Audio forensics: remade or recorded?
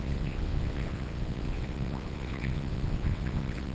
remade